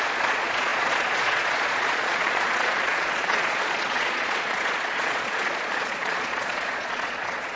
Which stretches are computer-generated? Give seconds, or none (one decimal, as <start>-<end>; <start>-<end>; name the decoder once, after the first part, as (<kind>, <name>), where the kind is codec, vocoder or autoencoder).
0.0-7.6 (vocoder, Vocos)